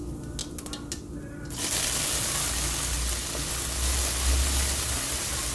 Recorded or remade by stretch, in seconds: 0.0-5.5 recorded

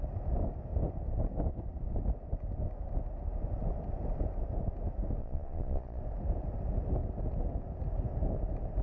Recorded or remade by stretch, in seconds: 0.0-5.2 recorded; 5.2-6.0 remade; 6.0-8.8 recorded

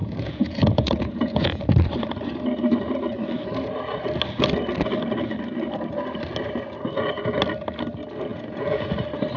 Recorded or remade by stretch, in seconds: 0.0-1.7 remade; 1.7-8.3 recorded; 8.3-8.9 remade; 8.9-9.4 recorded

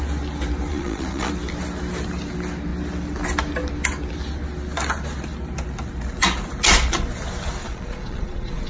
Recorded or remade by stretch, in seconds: 0.0-0.7 recorded; 0.7-1.3 remade; 1.3-7.6 recorded; 7.6-8.7 remade